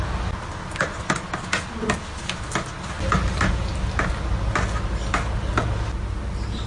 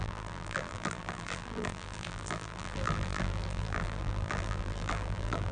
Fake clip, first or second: second